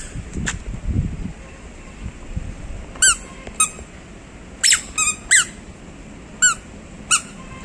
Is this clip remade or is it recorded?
recorded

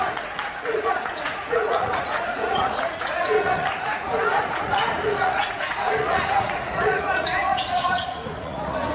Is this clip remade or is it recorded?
remade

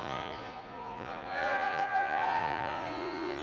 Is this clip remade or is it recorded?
remade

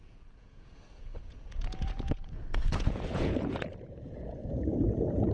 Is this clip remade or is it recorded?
remade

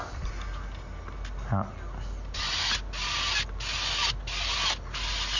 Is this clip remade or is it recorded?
recorded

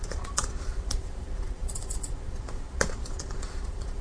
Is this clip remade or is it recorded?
remade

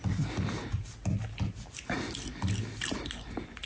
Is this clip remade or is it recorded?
recorded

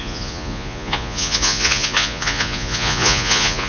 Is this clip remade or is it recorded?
remade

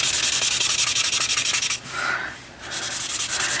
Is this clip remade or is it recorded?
recorded